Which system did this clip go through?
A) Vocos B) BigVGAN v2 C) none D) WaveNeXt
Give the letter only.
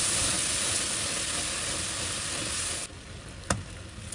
C